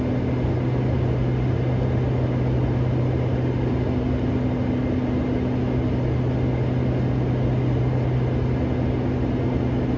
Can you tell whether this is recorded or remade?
recorded